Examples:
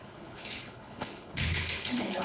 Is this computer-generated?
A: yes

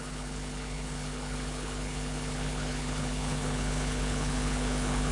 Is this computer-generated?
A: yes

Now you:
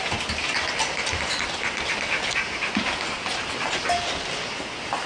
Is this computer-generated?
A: no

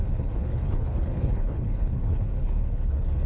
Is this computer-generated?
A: yes